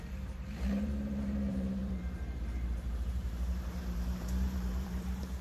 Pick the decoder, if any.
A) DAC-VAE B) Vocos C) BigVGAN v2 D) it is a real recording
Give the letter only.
C